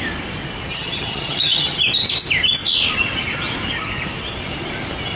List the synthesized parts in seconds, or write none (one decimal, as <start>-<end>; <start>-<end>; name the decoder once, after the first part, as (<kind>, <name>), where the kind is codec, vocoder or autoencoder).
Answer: 0.7-1.8 (vocoder, HiFi-GAN)